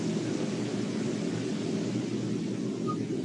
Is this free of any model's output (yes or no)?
yes